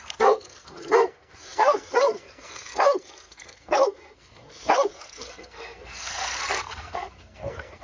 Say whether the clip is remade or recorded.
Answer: remade